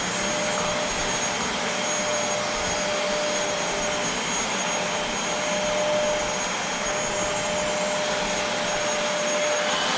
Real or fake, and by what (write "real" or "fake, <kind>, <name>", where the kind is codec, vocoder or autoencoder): real